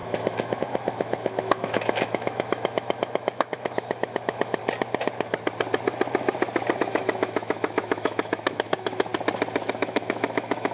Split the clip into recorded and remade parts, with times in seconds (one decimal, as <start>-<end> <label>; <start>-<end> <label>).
0.0-4.6 remade; 4.6-6.8 recorded; 6.8-9.1 remade; 9.1-9.7 recorded; 9.7-10.7 remade